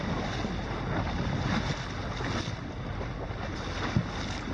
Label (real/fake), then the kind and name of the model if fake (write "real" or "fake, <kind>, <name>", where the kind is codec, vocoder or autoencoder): real